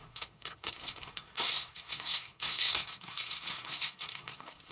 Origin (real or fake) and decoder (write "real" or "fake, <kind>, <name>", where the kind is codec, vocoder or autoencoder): fake, codec, SNAC